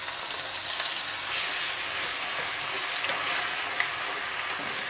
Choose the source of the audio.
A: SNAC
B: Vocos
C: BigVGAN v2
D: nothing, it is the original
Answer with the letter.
D